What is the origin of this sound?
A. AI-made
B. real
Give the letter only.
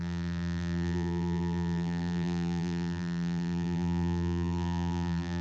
A